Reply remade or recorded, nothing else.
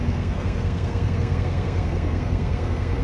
remade